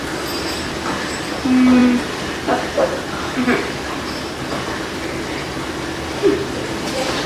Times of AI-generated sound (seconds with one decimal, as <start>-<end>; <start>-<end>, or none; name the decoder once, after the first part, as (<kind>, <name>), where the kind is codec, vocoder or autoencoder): 1.8-5.2 (vocoder, BigVGAN v2)